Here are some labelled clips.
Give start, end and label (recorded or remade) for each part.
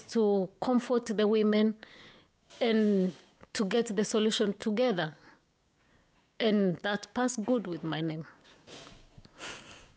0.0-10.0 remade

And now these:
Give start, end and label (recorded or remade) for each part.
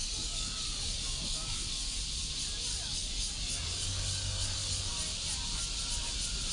0.0-2.0 remade; 2.0-2.7 recorded; 2.7-4.9 remade; 4.9-6.5 recorded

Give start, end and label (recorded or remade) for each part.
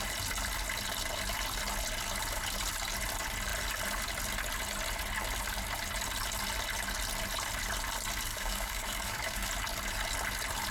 0.0-8.3 recorded; 8.3-9.5 remade; 9.5-10.7 recorded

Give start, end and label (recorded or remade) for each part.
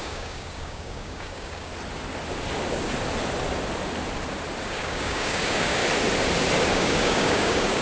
0.0-1.7 remade; 1.7-4.6 recorded; 4.6-5.8 remade; 5.8-6.7 recorded; 6.7-7.8 remade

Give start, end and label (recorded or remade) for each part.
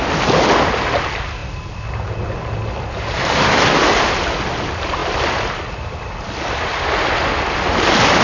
0.0-8.2 recorded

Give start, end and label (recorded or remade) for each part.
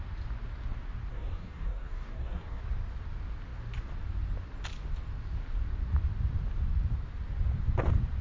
0.0-1.1 recorded; 1.1-2.6 remade; 2.6-8.2 recorded